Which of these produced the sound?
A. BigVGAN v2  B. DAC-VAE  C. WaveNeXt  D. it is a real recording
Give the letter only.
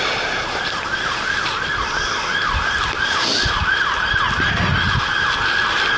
D